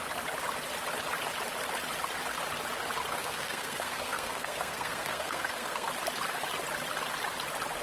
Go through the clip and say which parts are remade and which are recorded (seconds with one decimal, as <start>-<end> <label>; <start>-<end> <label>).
0.0-3.1 recorded; 3.1-5.9 remade; 5.9-7.8 recorded

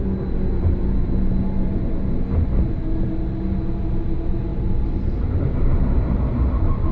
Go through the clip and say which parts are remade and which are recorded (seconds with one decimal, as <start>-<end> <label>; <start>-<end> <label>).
0.0-4.5 recorded; 4.5-6.9 remade

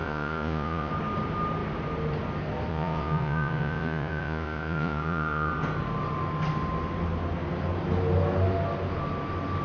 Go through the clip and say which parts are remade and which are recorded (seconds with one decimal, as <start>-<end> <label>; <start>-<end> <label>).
0.0-0.9 remade; 0.9-2.7 recorded; 2.7-5.5 remade; 5.5-9.6 recorded

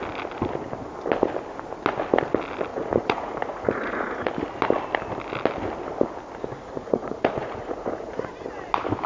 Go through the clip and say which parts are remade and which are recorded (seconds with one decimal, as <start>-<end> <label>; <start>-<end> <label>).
0.0-2.7 recorded; 2.7-4.3 remade; 4.3-6.5 recorded; 6.5-8.3 remade; 8.3-9.1 recorded

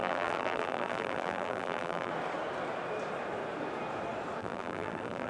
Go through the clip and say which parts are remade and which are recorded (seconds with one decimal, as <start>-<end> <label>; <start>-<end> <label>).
0.0-2.1 remade; 2.1-4.4 recorded; 4.4-5.3 remade

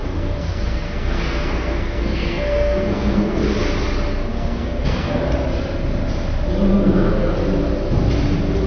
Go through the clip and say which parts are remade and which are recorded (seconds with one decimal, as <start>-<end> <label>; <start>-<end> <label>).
0.0-3.4 remade; 3.4-4.3 recorded; 4.3-5.2 remade; 5.2-6.7 recorded; 6.7-7.4 remade; 7.4-8.7 recorded

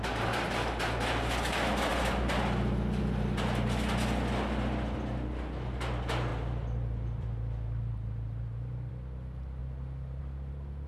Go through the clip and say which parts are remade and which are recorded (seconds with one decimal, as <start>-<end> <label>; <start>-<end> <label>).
0.0-10.9 recorded